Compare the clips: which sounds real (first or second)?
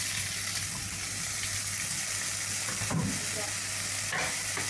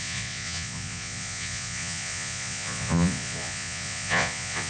first